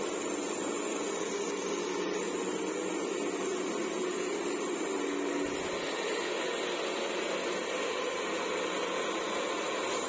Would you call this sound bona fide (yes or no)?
yes